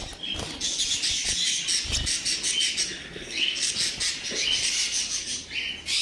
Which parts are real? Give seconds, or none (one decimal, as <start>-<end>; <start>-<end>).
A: 0.0-3.0; 3.7-6.0